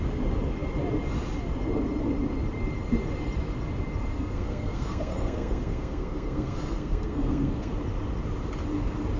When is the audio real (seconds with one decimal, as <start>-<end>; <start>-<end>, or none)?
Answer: 0.0-4.1; 7.7-9.2